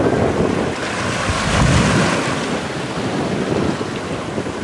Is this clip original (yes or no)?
yes